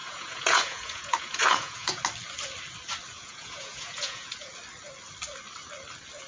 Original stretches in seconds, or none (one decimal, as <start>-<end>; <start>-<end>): 2.0-3.1; 4.5-6.3